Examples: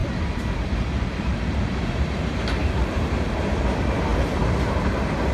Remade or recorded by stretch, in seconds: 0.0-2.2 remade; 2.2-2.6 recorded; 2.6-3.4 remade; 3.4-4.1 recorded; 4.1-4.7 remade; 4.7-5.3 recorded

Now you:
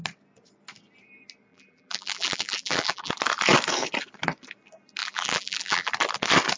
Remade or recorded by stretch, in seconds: 0.0-1.5 recorded; 1.5-3.1 remade; 3.1-5.0 recorded; 5.0-5.9 remade; 5.9-6.6 recorded

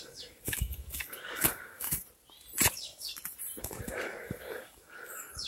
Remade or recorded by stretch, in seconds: 0.0-2.0 remade; 2.0-2.7 recorded; 2.7-3.1 remade; 3.1-3.6 recorded; 3.6-5.5 remade

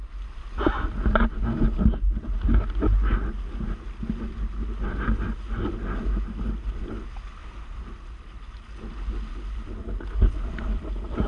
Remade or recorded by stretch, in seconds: 0.0-7.4 recorded; 7.4-8.4 remade; 8.4-11.3 recorded

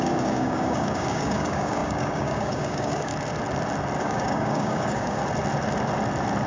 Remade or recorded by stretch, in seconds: 0.0-3.1 remade; 3.1-4.0 recorded; 4.0-5.2 remade; 5.2-6.5 recorded

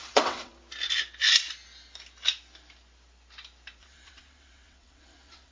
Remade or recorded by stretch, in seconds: 0.0-0.5 remade; 0.5-3.8 recorded; 3.8-5.5 remade